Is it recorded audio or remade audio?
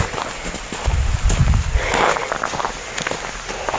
recorded